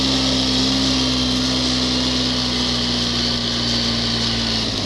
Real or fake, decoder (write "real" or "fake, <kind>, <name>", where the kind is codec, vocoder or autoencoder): real